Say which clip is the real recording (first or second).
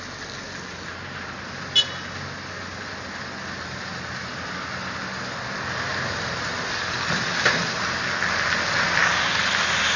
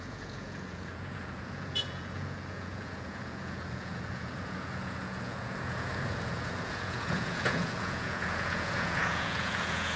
first